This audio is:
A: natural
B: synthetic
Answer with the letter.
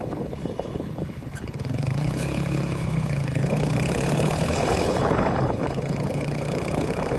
B